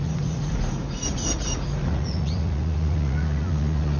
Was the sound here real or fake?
fake